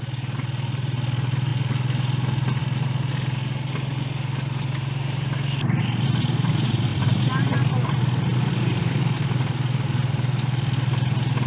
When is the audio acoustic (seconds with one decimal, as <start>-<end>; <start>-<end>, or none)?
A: 0.0-6.9; 7.7-11.5